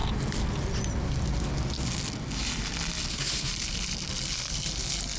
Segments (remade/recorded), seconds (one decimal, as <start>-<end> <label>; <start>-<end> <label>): 0.0-3.1 recorded; 3.1-3.5 remade; 3.5-5.2 recorded